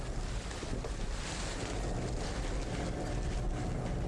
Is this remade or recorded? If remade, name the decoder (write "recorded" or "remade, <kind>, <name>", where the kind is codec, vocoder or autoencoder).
recorded